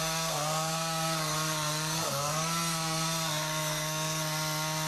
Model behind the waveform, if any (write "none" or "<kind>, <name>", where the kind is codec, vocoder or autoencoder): codec, SNAC